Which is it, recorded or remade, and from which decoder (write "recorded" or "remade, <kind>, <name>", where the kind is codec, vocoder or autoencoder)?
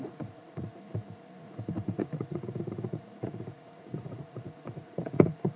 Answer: remade, vocoder, Vocos